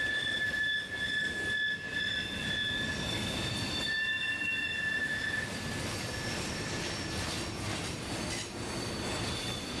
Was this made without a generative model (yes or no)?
yes